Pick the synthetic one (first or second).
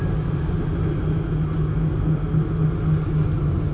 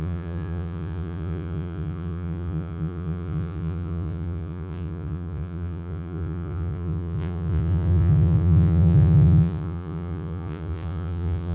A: second